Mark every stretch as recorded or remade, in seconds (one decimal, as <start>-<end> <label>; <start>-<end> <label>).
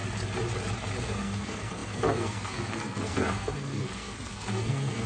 0.0-1.0 recorded; 1.0-5.1 remade